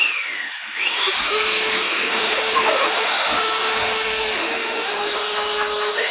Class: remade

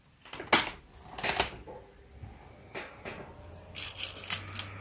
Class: recorded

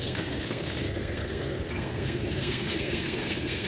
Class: remade